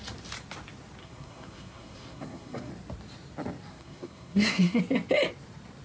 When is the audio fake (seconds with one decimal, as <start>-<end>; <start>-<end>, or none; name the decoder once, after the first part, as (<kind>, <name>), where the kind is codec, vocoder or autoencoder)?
1.0-2.7 (codec, SNAC); 3.7-4.8